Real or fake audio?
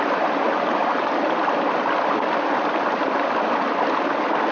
real